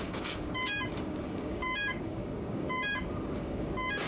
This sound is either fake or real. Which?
fake